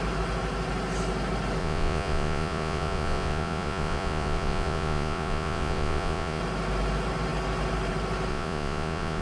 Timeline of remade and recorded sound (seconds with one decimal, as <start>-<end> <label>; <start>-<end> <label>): 0.0-1.6 recorded; 1.6-6.4 remade; 6.4-8.3 recorded; 8.3-9.2 remade